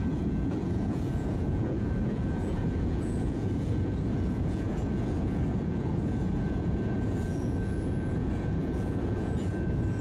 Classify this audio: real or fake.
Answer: fake